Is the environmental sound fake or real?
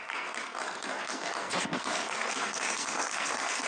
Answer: fake